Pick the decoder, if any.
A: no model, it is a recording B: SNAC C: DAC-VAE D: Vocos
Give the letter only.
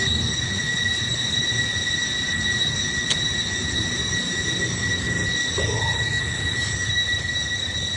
A